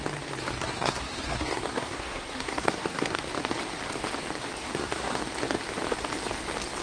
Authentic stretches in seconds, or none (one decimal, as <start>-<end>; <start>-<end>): 0.0-0.6; 3.2-4.6; 5.2-6.8